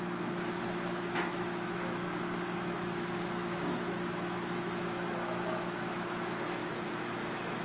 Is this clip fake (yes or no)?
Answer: yes